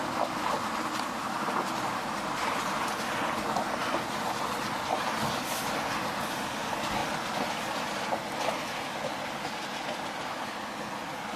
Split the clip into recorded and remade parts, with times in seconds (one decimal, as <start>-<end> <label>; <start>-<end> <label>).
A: 0.0-11.4 recorded